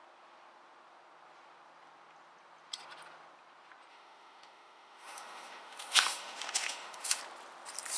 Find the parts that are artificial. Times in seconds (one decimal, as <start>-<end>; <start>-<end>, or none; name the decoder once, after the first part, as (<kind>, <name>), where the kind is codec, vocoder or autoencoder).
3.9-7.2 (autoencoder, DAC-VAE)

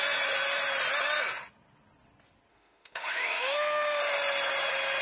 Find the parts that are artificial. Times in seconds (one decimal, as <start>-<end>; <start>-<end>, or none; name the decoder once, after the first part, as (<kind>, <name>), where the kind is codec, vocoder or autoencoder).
2.5-4.0 (autoencoder, DAC-VAE)

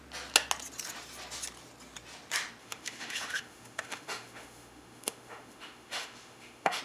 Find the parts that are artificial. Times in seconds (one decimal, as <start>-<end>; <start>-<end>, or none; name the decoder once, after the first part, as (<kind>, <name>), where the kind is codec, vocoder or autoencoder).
2.6-6.8 (autoencoder, DAC-VAE)

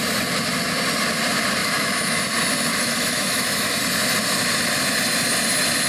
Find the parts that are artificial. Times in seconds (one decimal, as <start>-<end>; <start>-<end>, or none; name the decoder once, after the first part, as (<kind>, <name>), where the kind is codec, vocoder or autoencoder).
1.6-2.2 (autoencoder, DAC-VAE); 2.7-3.8

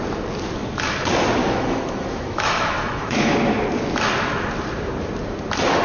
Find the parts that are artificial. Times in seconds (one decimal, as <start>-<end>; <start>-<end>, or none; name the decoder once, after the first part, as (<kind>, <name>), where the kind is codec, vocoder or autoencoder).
1.4-3.3 (autoencoder, DAC-VAE)

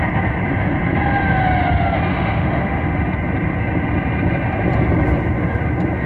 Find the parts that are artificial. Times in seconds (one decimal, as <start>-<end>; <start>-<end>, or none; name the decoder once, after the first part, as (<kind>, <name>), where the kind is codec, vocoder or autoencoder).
2.1-3.0 (autoencoder, DAC-VAE)

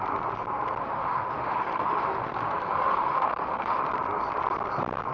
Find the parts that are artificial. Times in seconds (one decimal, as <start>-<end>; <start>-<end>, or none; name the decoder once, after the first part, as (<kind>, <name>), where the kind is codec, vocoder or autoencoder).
0.8-3.9 (autoencoder, DAC-VAE)

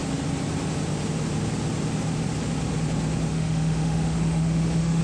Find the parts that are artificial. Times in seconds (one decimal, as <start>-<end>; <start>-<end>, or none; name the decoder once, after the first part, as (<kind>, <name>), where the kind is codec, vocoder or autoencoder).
3.3-5.0 (autoencoder, DAC-VAE)